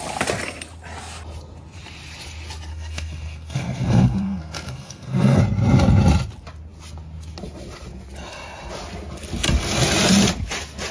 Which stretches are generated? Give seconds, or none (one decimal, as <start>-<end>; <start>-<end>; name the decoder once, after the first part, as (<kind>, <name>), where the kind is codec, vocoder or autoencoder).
2.7-5.4 (codec, SNAC)

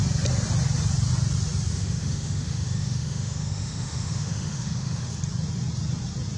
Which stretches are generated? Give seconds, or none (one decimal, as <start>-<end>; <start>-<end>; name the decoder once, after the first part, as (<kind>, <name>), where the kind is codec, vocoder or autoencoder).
1.7-5.1 (autoencoder, DAC-VAE)